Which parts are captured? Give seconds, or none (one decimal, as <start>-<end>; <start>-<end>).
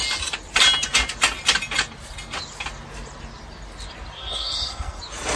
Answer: 0.0-4.2; 5.0-5.4